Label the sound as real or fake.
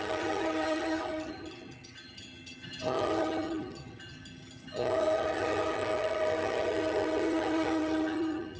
fake